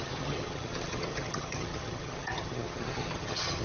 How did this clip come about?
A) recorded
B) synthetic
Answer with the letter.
B